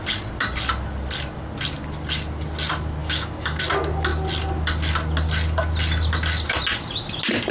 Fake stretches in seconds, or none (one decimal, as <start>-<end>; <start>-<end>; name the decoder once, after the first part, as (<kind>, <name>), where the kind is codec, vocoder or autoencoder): 3.0-3.6 (codec, DAC)